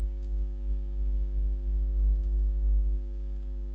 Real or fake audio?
fake